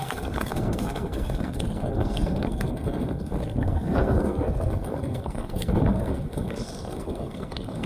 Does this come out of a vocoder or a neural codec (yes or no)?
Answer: yes